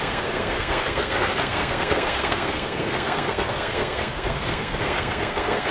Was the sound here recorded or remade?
remade